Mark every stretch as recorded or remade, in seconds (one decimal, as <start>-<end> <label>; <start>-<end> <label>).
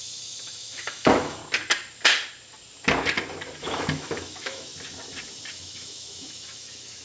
0.0-1.4 remade; 1.4-3.6 recorded; 3.6-4.7 remade; 4.7-5.5 recorded; 5.5-7.0 remade